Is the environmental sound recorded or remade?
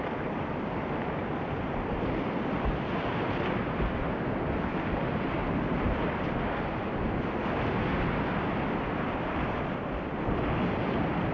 recorded